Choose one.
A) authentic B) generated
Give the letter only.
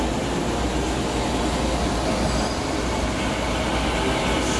A